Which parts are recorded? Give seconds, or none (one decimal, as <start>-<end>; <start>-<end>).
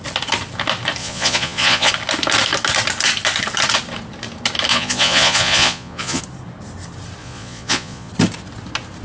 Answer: 0.0-1.0; 1.9-4.7; 6.2-7.2; 8.1-9.0